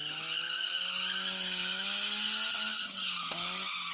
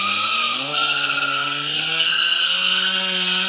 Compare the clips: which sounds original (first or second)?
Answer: first